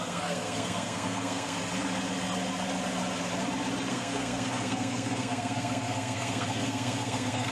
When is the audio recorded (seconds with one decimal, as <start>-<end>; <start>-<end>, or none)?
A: 1.6-3.9